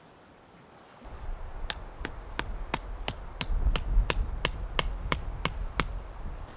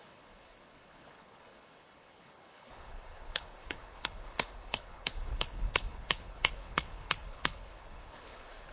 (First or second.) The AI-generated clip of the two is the second